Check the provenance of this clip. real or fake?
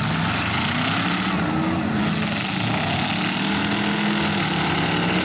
real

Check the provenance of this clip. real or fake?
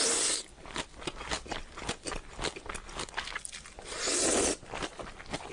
real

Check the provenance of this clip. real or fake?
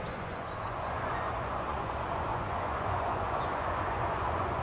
fake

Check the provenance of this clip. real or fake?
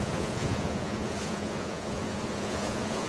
fake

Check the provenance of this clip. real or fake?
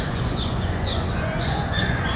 fake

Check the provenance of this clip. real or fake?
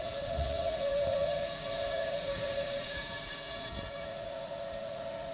fake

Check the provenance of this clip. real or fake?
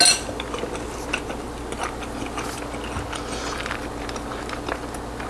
real